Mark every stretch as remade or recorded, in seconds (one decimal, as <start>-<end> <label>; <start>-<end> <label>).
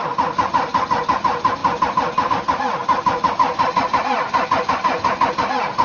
0.0-5.8 recorded